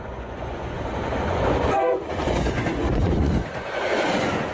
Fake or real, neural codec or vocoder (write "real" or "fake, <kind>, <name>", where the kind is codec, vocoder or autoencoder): fake, vocoder, Vocos